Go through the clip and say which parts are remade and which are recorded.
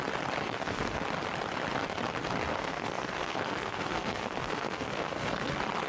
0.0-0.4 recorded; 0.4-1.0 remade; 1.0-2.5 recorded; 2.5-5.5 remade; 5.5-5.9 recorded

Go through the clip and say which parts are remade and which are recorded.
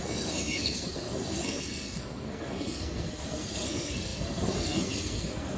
0.0-5.6 remade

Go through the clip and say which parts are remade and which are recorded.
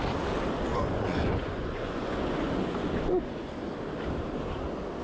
0.0-0.7 recorded; 0.7-3.5 remade; 3.5-5.0 recorded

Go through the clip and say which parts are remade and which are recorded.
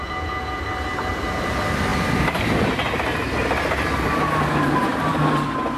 0.0-0.6 remade; 0.6-5.8 recorded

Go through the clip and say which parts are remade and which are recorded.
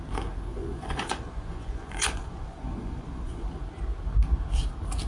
0.0-0.5 recorded; 0.5-3.6 remade; 3.6-5.1 recorded